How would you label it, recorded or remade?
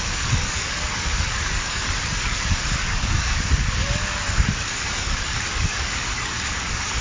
remade